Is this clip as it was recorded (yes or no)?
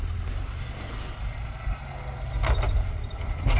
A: yes